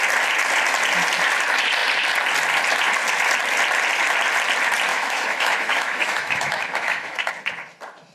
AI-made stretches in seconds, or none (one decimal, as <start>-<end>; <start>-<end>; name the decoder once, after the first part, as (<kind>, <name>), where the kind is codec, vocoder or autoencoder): 4.9-7.3 (autoencoder, DAC-VAE)